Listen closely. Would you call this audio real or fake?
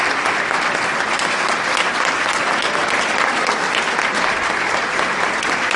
real